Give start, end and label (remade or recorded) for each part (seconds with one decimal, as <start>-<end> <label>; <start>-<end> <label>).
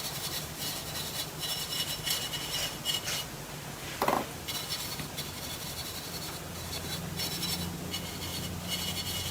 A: 0.0-9.3 recorded